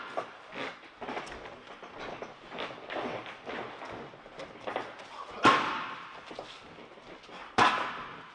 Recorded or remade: recorded